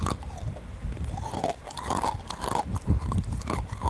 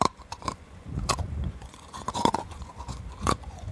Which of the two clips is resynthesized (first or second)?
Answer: second